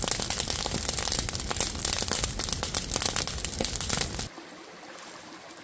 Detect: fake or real real